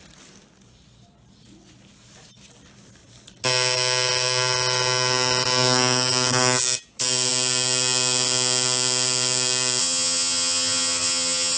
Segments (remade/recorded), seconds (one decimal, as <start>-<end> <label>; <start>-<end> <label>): 0.0-9.8 recorded; 9.8-11.6 remade